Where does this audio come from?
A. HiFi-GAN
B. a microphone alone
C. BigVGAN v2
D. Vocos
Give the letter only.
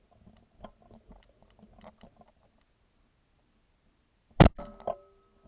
B